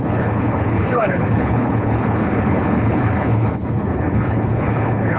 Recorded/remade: remade